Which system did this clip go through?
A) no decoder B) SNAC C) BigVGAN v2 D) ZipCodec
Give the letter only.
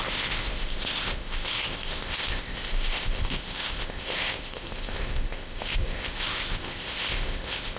D